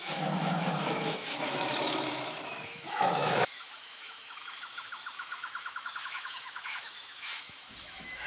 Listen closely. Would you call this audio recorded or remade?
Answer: remade